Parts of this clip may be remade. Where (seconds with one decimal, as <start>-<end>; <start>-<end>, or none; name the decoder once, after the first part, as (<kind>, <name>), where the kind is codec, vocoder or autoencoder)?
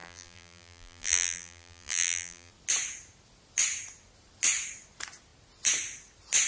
0.0-2.5 (vocoder, BigVGAN v2)